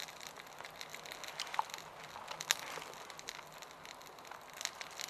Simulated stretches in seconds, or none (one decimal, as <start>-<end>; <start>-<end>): none